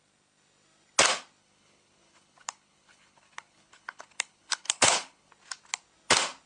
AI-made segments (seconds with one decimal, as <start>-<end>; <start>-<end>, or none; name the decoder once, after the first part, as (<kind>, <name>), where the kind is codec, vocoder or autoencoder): 1.4-5.3 (codec, HILCodec)